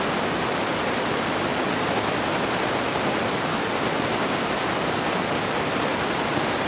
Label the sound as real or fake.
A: real